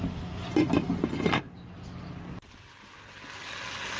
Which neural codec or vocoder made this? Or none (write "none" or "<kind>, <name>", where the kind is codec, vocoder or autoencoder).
none